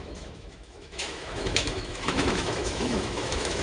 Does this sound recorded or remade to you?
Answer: remade